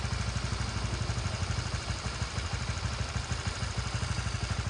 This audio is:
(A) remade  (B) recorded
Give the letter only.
B